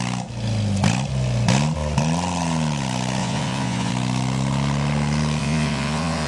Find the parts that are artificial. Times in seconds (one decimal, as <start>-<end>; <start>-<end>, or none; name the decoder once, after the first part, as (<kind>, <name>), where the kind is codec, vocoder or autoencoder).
3.2-3.9 (vocoder, Vocos); 5.4-6.3